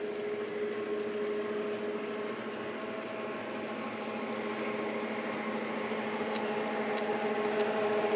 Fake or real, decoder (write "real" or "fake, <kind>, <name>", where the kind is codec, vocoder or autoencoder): real